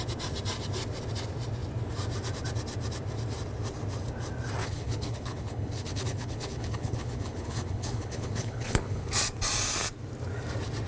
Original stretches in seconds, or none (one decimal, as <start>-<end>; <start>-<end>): 0.0-4.6; 9.1-10.9